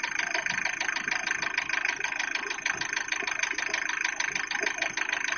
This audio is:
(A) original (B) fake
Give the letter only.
A